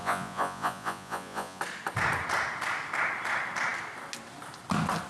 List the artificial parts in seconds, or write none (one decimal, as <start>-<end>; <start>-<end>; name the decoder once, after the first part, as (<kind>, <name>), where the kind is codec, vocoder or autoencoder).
0.0-1.6 (vocoder, Vocos)

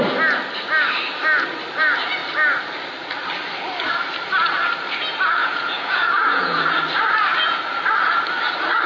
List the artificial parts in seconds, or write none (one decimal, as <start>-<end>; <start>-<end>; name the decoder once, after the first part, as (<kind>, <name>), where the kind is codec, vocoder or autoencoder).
5.4-6.6 (vocoder, Vocos)